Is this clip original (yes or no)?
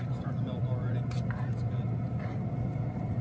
yes